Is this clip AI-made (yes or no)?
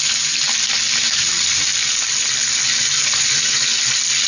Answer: no